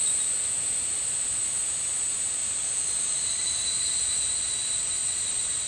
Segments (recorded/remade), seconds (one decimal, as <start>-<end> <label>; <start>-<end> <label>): 0.0-2.4 recorded; 2.4-4.0 remade; 4.0-5.0 recorded; 5.0-5.7 remade